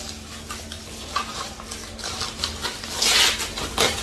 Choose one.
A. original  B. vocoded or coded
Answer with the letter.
A